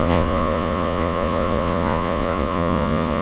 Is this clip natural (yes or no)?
no